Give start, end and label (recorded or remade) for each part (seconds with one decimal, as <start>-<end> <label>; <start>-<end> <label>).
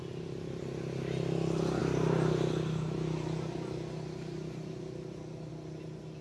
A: 0.0-6.2 recorded